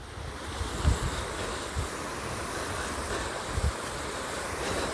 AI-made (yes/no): no